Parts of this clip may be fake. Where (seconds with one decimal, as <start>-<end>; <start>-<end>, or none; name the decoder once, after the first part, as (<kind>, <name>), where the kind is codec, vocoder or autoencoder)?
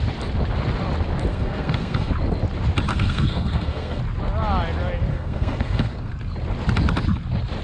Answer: 1.3-2.1 (codec, SNAC); 2.9-4.0; 5.1-6.1